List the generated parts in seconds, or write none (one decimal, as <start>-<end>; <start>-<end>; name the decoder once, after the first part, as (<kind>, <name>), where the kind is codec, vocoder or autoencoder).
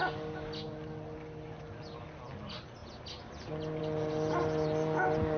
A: none